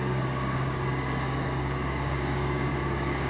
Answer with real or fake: fake